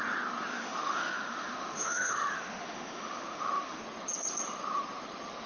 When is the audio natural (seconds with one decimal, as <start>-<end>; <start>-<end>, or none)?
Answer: 0.0-0.5; 3.8-5.5